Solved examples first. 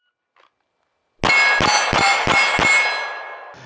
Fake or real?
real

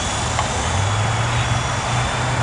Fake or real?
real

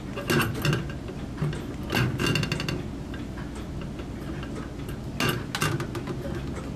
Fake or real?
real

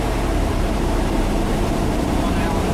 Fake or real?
fake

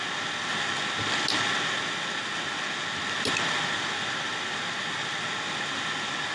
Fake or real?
real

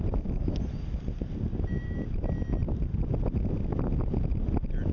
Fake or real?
real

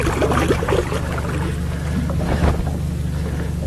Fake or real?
real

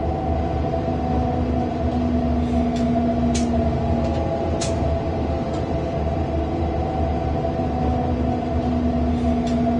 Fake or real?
real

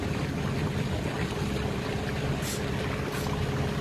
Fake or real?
real